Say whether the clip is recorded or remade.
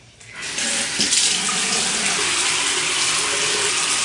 recorded